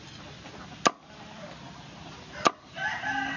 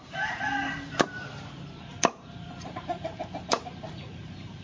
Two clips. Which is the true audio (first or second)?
first